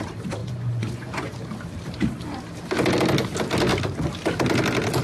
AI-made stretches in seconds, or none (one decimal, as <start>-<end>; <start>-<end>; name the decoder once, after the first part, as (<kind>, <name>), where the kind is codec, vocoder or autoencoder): 0.4-1.4 (vocoder, Vocos)